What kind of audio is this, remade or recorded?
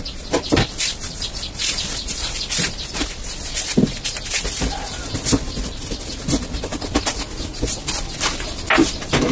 recorded